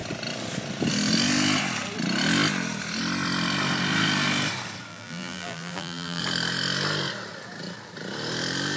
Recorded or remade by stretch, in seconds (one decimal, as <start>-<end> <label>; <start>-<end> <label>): 0.0-4.9 recorded; 4.9-6.2 remade; 6.2-8.8 recorded